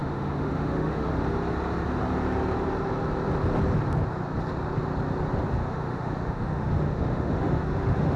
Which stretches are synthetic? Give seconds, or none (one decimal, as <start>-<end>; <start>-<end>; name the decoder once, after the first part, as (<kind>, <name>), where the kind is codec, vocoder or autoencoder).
0.0-1.2 (autoencoder, DAC-VAE); 5.6-8.2